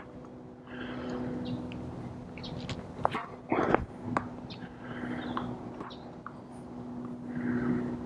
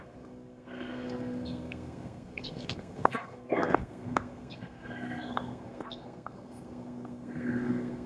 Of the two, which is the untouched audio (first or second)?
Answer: first